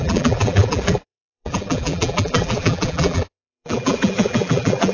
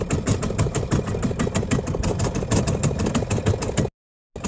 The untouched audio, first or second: second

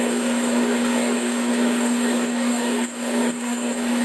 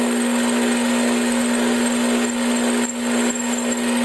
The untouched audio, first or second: second